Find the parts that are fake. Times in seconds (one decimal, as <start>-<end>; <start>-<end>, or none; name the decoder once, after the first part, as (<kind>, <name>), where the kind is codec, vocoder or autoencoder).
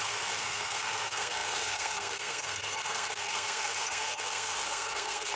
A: 0.0-5.4 (codec, SNAC)